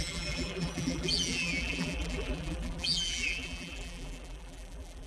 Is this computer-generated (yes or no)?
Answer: yes